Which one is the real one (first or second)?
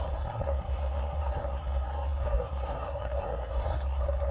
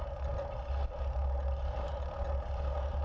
second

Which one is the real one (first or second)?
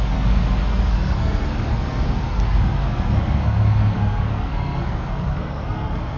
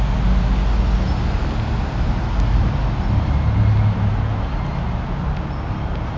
second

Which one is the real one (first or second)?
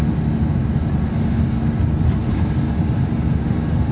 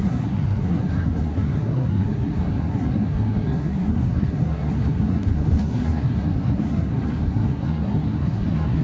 first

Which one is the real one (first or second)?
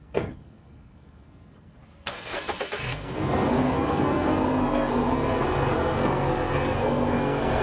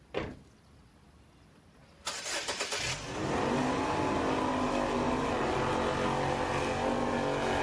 second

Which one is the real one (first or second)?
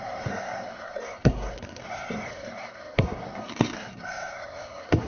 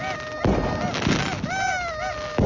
second